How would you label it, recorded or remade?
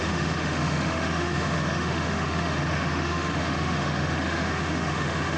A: remade